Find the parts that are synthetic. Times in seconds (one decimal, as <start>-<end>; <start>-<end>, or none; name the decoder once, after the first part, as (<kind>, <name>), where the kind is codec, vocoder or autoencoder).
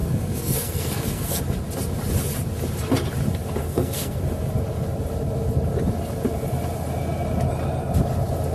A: 0.0-1.4 (codec, SNAC); 3.6-4.2